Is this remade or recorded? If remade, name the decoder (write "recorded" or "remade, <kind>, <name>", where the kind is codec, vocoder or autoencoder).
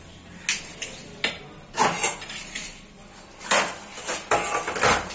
recorded